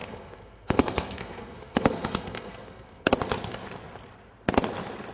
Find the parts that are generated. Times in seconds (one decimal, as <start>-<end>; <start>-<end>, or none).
0.0-3.1